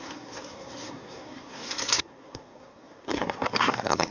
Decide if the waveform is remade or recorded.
remade